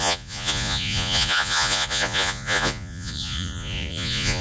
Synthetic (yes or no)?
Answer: yes